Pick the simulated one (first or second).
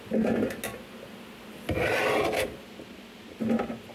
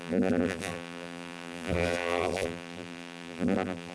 second